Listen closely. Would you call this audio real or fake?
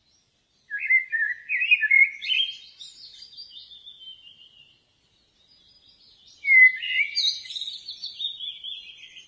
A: real